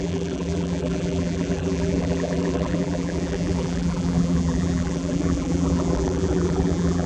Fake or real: fake